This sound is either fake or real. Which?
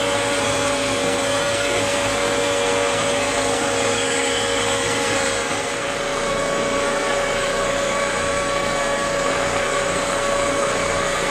fake